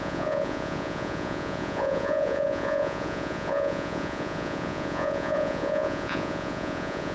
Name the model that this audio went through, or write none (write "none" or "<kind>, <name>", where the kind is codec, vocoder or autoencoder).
vocoder, Vocos